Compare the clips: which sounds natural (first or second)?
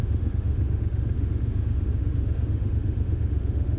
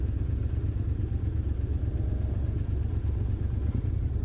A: second